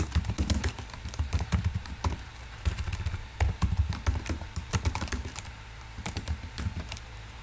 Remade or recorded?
remade